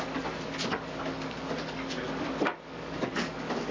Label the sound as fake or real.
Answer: fake